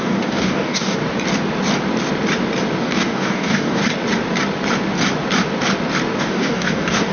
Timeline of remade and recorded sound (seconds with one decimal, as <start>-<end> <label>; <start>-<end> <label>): 0.0-1.0 remade; 1.0-2.8 recorded; 2.8-3.8 remade; 3.8-6.2 recorded; 6.2-7.1 remade